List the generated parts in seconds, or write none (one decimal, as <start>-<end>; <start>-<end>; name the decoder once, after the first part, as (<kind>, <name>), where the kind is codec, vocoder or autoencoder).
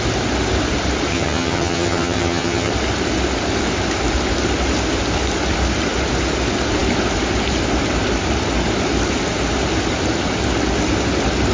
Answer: 1.1-2.7 (vocoder, HiFi-GAN)